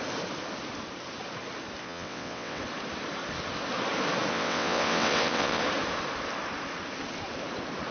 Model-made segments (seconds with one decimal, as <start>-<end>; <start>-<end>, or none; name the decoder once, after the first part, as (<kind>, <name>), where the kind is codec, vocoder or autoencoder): 1.8-2.6 (vocoder, WaveNeXt); 4.3-5.6